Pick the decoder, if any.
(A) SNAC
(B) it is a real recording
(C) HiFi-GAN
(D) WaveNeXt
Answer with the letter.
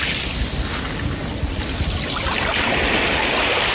B